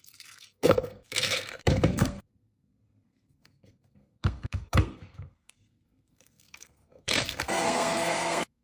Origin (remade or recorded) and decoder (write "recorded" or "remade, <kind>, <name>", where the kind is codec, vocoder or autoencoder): remade, codec, SNAC